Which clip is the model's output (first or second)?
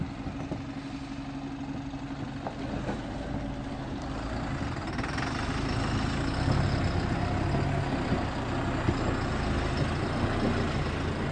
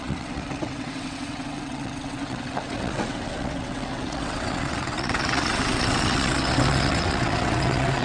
second